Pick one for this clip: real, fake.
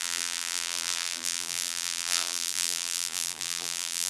fake